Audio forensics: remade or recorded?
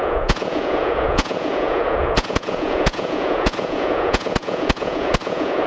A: remade